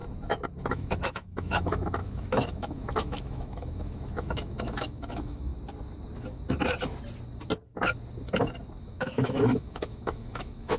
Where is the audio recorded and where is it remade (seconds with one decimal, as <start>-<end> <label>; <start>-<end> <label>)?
0.0-0.7 recorded; 0.7-5.5 remade; 5.5-8.8 recorded; 8.8-10.8 remade